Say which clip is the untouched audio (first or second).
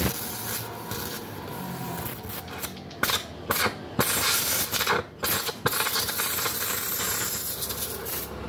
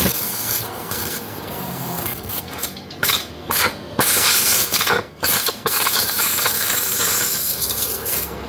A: first